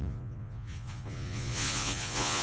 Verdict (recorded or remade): remade